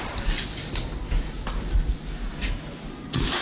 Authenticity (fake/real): real